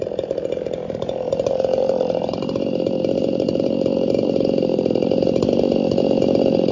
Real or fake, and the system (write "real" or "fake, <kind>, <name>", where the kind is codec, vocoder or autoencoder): fake, vocoder, BigVGAN v2